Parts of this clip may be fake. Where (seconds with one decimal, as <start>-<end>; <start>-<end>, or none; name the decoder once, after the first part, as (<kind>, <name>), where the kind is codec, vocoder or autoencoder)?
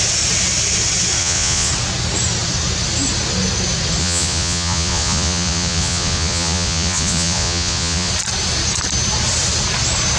1.2-1.7 (vocoder, Vocos); 4.0-8.1